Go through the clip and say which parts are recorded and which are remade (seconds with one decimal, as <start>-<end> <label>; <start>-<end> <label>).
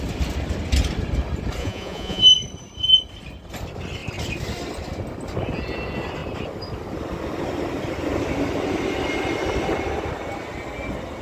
0.0-1.6 recorded; 1.6-2.2 remade; 2.2-11.2 recorded